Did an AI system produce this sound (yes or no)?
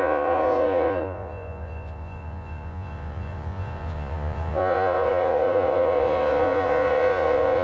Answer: yes